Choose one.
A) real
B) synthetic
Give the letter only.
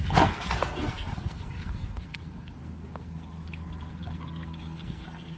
B